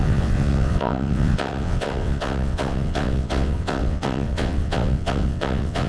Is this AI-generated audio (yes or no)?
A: yes